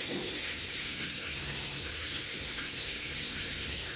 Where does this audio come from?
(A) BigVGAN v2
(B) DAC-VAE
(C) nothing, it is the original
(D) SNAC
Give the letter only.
D